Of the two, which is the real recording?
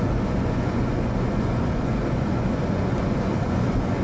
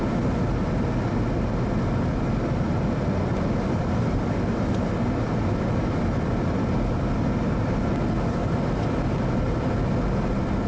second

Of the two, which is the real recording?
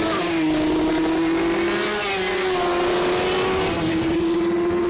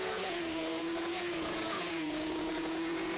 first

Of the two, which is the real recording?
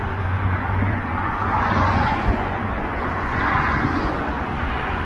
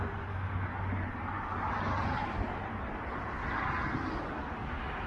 second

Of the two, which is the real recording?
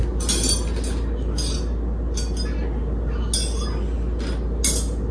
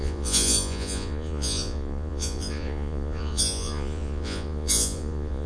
first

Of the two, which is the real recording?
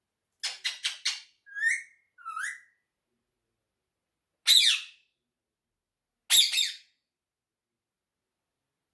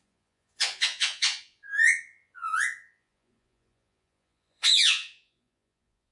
first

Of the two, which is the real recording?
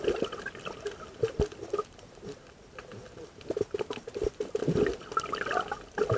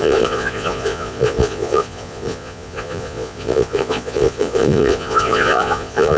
first